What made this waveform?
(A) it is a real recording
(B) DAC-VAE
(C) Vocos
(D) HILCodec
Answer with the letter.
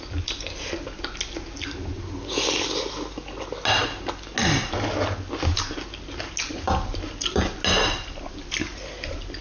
A